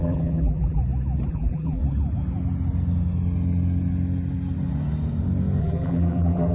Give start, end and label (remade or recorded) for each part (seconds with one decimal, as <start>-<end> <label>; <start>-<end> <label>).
0.0-0.8 remade; 0.8-1.3 recorded; 1.3-1.8 remade; 1.8-5.6 recorded; 5.6-6.5 remade